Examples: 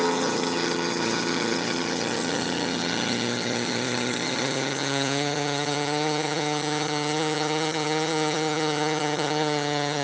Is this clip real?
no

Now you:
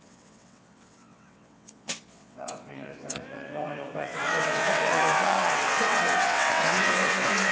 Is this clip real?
no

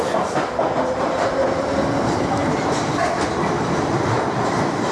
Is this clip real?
yes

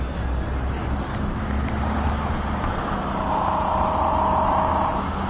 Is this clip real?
yes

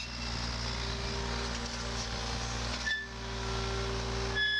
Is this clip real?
yes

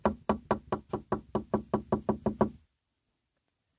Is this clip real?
yes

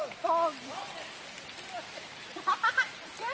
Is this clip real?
yes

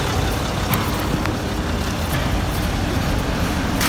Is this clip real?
yes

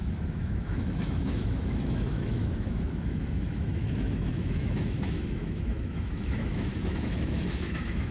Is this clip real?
no